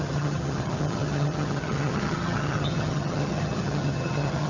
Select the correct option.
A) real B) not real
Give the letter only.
B